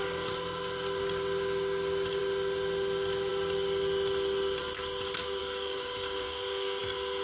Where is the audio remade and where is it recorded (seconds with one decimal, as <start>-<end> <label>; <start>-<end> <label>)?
0.0-5.4 recorded; 5.4-6.8 remade; 6.8-7.2 recorded